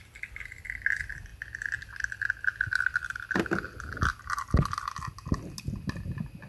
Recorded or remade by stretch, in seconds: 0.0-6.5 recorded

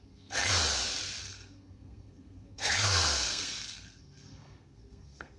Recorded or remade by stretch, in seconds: 0.0-0.5 remade; 0.5-1.2 recorded; 1.2-5.4 remade